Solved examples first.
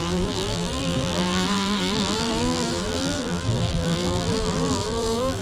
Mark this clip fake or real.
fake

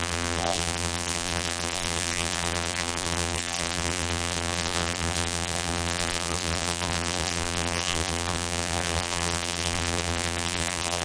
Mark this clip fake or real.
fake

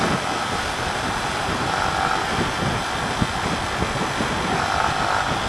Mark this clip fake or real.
real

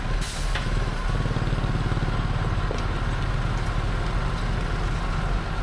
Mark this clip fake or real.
real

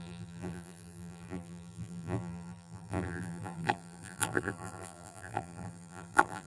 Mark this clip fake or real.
fake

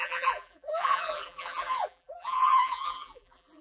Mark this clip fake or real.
fake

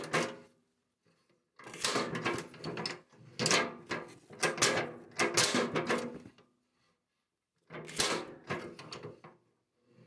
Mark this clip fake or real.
real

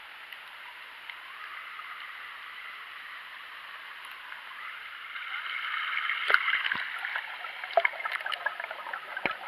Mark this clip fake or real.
real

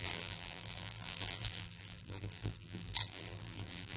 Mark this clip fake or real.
fake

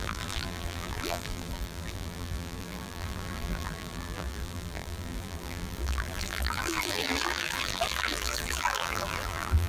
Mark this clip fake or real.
fake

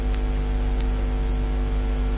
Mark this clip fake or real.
real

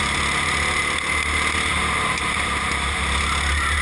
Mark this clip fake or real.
real